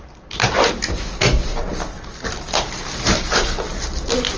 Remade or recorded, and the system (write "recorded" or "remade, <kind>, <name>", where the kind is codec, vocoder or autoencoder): recorded